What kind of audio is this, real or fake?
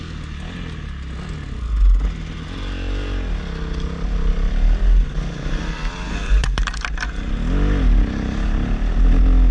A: real